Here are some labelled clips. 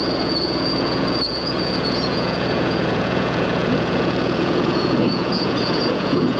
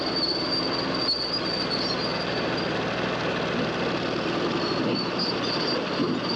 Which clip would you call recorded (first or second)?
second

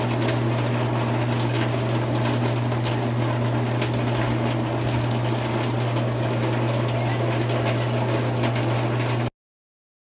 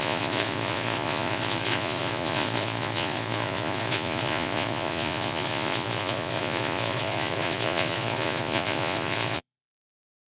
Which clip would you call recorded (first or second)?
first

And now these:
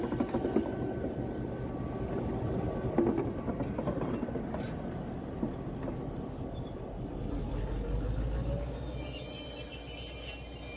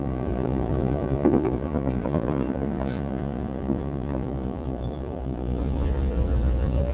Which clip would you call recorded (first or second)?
first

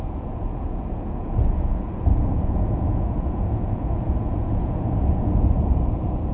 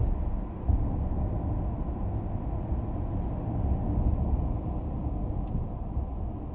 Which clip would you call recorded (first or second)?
second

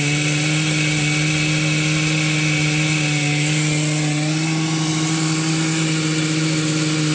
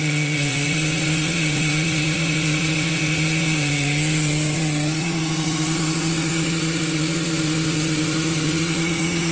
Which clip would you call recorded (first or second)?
first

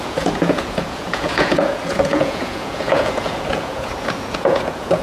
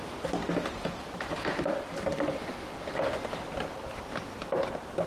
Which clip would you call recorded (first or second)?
second